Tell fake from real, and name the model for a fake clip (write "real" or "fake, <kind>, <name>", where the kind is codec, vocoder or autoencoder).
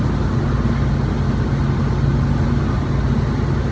real